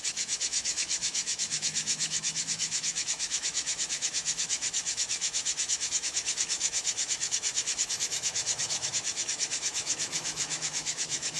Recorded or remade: remade